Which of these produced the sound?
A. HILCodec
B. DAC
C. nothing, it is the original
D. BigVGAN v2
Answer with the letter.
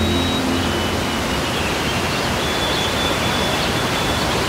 C